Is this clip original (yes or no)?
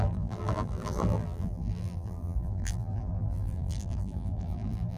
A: no